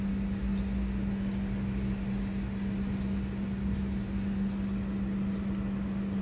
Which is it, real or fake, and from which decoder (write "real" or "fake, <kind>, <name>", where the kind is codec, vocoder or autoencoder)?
real